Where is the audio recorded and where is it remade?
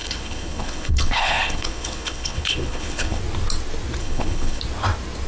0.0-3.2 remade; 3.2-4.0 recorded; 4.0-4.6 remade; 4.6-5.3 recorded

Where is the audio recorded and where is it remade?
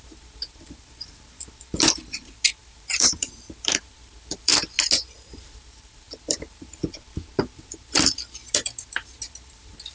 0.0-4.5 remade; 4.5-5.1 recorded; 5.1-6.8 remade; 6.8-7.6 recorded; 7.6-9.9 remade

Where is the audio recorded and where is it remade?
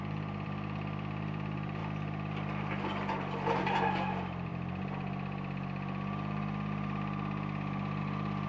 0.0-1.8 remade; 1.8-3.6 recorded; 3.6-4.5 remade; 4.5-8.0 recorded; 8.0-8.5 remade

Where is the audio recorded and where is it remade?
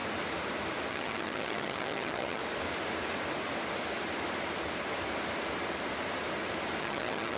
0.0-0.9 recorded; 0.9-2.4 remade; 2.4-6.8 recorded; 6.8-7.4 remade